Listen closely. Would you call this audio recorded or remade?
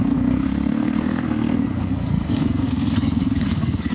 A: remade